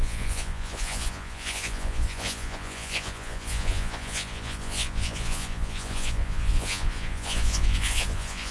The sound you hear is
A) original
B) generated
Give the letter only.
B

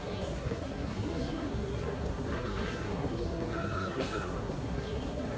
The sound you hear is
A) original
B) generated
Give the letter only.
B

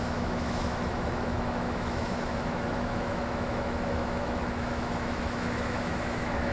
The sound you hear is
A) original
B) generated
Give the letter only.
B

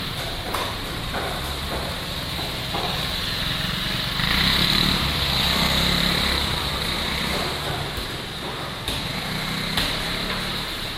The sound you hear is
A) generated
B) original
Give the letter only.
A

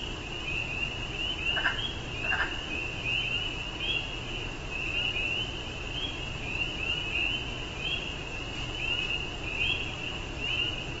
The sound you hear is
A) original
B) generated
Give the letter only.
A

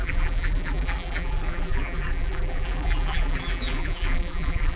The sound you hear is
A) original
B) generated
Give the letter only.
B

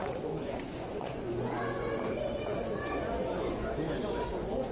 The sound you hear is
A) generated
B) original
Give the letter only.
A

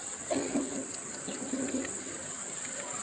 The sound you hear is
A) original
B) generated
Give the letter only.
B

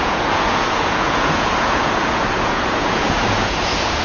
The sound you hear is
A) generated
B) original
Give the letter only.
A